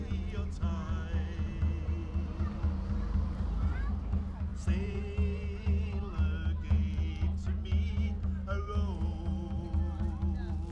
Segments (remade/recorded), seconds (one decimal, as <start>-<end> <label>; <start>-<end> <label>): 0.0-4.5 recorded; 4.5-5.0 remade; 5.0-10.7 recorded